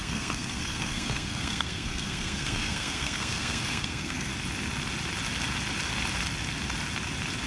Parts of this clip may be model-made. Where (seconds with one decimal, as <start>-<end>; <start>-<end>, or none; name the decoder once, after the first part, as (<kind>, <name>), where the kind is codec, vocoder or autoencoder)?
0.0-4.3 (codec, SNAC)